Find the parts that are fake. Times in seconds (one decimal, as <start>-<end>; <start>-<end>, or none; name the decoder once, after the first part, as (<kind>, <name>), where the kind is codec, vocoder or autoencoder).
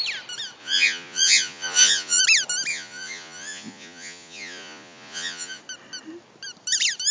0.6-2.2 (vocoder, Vocos); 2.7-5.6